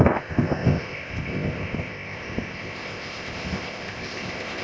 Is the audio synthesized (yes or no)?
yes